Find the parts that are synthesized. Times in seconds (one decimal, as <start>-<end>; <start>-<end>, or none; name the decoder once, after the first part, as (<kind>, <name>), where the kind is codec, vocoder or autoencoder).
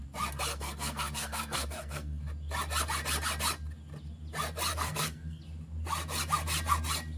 0.5-2.2 (codec, SNAC); 4.7-5.4